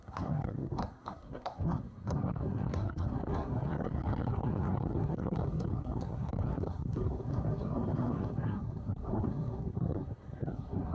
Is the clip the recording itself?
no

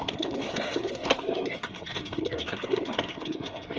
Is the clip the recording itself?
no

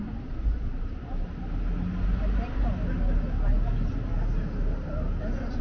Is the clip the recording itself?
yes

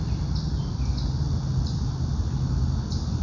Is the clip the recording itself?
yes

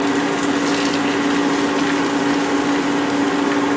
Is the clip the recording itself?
yes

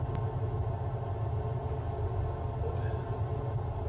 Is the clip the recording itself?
yes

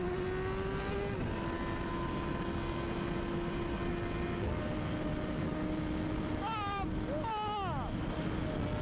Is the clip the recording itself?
yes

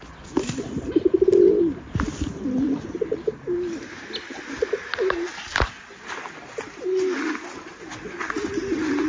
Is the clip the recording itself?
yes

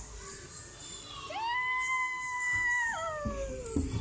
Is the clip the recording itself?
yes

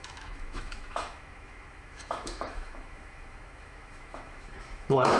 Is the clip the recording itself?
no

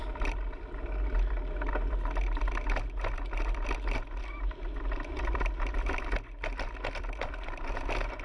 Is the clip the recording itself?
yes